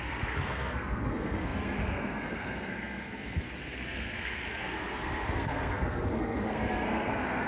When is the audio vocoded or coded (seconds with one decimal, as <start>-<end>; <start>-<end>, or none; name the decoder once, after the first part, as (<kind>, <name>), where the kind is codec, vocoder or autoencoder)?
0.0-7.5 (codec, SNAC)